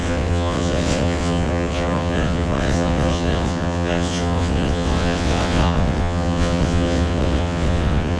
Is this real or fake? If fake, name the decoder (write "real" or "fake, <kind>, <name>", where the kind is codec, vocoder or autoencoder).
fake, vocoder, WaveNeXt